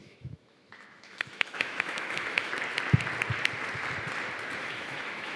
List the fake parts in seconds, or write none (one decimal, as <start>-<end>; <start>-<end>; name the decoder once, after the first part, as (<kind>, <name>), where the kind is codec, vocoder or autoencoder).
0.0-2.5 (autoencoder, DAC-VAE); 4.6-5.4